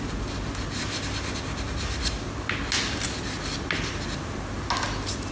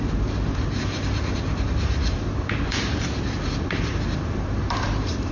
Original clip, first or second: first